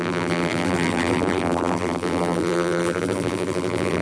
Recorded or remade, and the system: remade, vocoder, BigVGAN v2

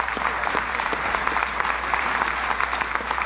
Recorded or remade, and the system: remade, vocoder, BigVGAN v2